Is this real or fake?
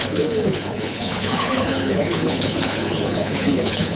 fake